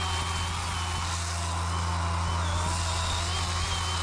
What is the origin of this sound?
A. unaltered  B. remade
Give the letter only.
A